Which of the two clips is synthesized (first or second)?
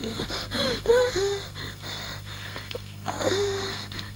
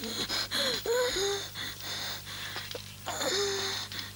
first